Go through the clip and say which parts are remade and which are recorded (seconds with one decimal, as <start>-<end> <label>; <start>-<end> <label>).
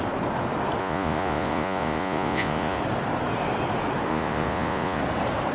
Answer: 0.0-0.8 recorded; 0.8-2.8 remade; 2.8-4.1 recorded; 4.1-5.0 remade; 5.0-5.5 recorded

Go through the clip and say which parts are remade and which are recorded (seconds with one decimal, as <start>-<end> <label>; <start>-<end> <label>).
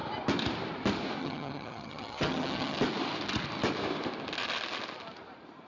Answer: 0.0-1.2 recorded; 1.2-2.8 remade; 2.8-5.7 recorded